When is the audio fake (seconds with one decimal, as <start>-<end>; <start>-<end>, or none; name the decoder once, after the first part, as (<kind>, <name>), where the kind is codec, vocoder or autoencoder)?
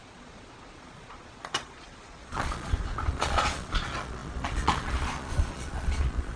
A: 0.0-6.4 (vocoder, Vocos)